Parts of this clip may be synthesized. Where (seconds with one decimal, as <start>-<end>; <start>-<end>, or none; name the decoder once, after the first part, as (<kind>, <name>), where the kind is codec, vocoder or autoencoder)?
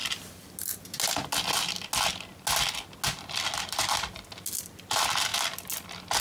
none